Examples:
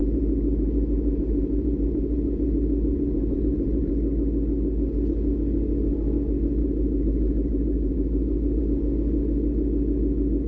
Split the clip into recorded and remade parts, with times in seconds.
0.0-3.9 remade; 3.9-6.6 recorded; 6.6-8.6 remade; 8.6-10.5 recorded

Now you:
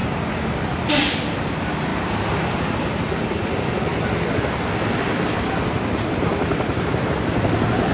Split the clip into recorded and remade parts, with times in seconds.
0.0-7.9 recorded

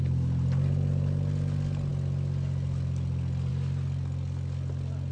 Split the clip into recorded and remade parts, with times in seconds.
0.0-5.1 recorded

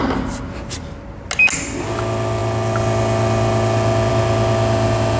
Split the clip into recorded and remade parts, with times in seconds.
0.0-5.2 recorded

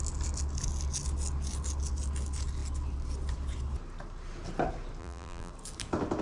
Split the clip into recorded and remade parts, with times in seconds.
0.0-5.0 recorded; 5.0-5.5 remade; 5.5-6.2 recorded

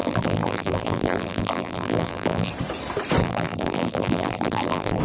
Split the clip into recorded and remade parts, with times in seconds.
0.0-2.5 remade; 2.5-3.2 recorded; 3.2-5.0 remade

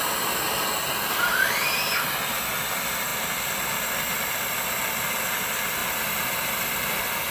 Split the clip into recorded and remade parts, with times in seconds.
0.0-5.8 recorded; 5.8-7.3 remade

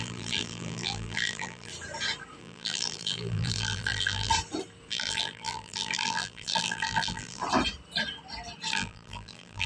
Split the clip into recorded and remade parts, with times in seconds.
0.0-1.7 remade; 1.7-2.4 recorded; 2.4-4.3 remade; 4.3-4.9 recorded; 4.9-7.4 remade; 7.4-8.7 recorded; 8.7-9.7 remade